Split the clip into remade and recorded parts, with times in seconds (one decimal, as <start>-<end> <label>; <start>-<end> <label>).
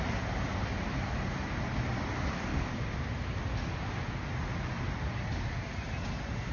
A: 0.0-6.5 recorded